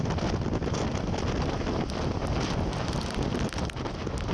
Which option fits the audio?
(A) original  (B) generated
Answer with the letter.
A